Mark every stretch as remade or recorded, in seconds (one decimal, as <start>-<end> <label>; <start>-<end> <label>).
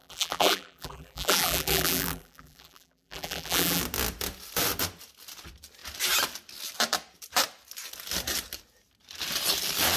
0.0-3.8 remade; 3.8-10.0 recorded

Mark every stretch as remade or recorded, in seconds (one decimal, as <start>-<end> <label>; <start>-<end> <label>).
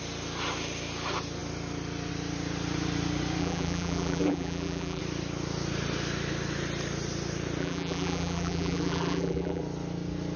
0.0-3.4 recorded; 3.4-5.0 remade; 5.0-7.6 recorded; 7.6-9.6 remade; 9.6-10.4 recorded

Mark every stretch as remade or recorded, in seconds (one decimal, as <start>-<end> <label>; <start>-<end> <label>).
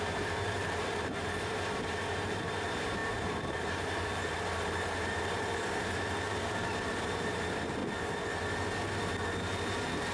0.0-7.8 remade; 7.8-10.1 recorded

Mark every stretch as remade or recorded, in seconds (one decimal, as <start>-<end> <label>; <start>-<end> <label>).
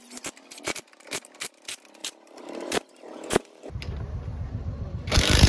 0.0-2.0 recorded; 2.0-5.5 remade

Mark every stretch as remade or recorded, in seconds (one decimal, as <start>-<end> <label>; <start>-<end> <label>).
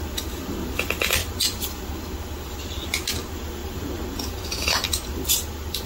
0.0-5.9 recorded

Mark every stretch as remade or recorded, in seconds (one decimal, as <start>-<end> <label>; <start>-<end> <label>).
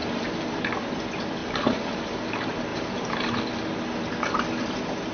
0.0-0.7 remade; 0.7-1.4 recorded; 1.4-2.0 remade; 2.0-2.7 recorded; 2.7-3.4 remade; 3.4-5.1 recorded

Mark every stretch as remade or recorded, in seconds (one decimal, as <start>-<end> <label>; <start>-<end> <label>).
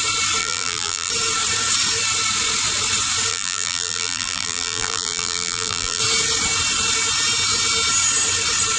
0.0-0.4 recorded; 0.4-1.1 remade; 1.1-3.3 recorded; 3.3-6.0 remade; 6.0-8.8 recorded